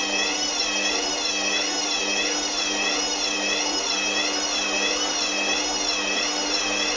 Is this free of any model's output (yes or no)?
yes